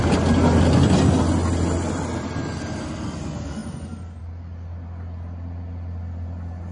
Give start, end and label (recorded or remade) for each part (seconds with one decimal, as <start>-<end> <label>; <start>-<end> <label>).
0.0-6.7 recorded